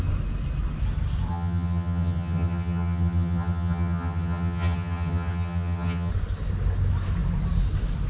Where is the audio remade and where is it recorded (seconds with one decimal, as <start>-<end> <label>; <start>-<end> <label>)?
0.0-1.3 recorded; 1.3-6.1 remade; 6.1-8.1 recorded